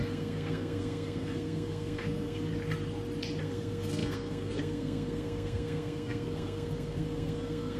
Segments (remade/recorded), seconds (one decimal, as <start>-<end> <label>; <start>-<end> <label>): 0.0-2.5 remade; 2.5-3.4 recorded; 3.4-7.8 remade

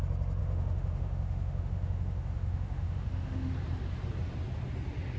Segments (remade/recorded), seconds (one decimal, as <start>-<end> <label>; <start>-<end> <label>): 0.0-0.4 recorded; 0.4-3.5 remade; 3.5-5.2 recorded

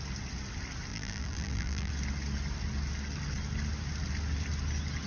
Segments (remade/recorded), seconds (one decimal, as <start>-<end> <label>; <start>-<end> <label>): 0.0-0.9 recorded; 0.9-1.9 remade; 1.9-5.1 recorded

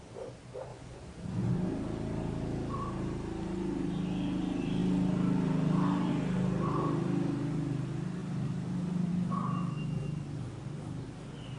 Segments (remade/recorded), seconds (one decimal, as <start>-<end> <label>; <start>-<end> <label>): 0.0-0.7 recorded; 0.7-1.5 remade; 1.5-11.6 recorded

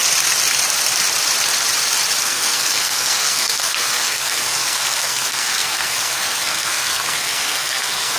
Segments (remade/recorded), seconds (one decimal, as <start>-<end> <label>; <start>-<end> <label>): 0.0-2.2 recorded; 2.2-8.2 remade

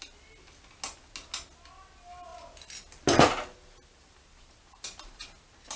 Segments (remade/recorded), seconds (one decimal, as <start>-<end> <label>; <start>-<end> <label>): 0.0-5.8 recorded

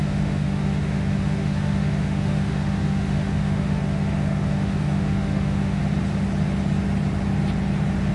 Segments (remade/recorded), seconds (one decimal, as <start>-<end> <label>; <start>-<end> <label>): 0.0-5.8 remade; 5.8-8.1 recorded